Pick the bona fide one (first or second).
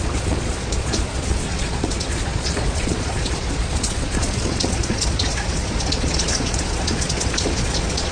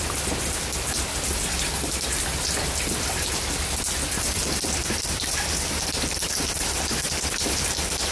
second